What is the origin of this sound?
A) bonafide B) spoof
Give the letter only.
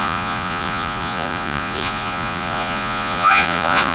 B